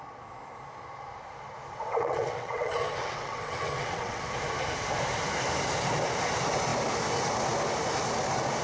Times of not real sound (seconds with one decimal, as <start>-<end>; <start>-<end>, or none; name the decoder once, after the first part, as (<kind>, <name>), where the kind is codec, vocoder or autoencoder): 1.7-4.2 (vocoder, WaveNeXt)